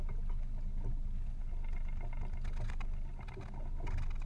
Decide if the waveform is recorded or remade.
recorded